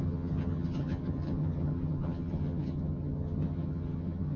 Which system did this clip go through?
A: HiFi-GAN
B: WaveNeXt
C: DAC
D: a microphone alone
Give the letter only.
A